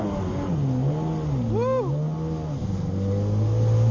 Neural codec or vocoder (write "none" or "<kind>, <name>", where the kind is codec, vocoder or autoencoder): none